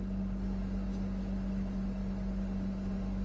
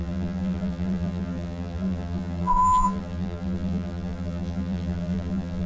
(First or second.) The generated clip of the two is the second